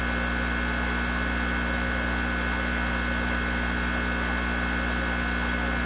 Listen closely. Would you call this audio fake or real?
real